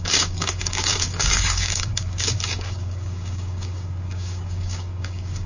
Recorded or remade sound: remade